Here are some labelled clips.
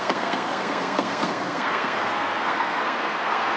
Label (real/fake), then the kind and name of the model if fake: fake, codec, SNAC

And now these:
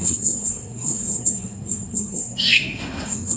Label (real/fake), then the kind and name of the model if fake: fake, codec, SNAC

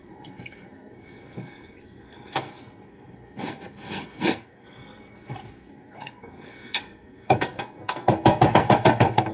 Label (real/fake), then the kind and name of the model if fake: fake, codec, SNAC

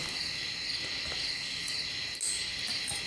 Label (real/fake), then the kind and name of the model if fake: real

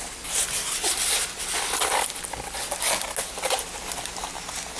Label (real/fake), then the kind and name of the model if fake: real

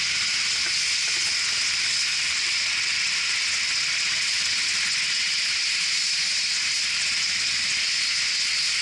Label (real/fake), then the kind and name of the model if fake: real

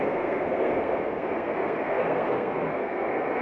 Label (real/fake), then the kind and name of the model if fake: fake, codec, SNAC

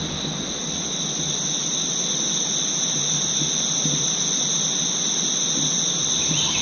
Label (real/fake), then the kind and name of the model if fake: real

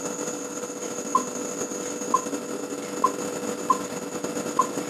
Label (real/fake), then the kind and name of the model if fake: real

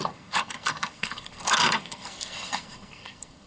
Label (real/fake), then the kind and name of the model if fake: fake, codec, SNAC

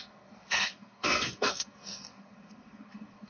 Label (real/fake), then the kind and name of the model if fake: fake, codec, SNAC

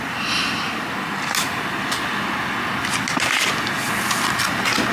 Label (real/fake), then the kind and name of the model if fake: real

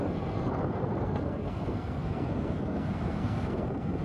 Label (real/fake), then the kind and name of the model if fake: fake, codec, SNAC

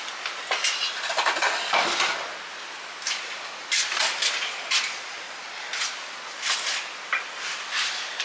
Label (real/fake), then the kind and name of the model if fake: real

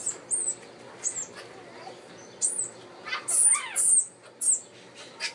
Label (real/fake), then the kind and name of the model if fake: real